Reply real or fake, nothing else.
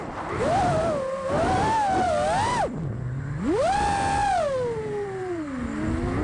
real